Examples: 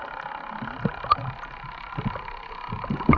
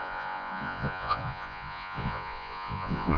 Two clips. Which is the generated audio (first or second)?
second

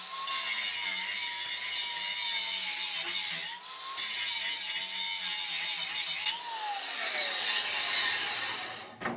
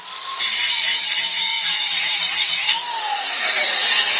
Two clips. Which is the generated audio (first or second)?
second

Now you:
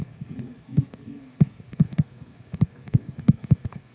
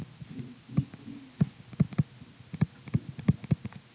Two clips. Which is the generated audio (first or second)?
first